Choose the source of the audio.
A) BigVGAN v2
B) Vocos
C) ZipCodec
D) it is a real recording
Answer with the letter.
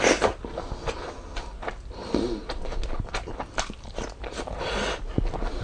D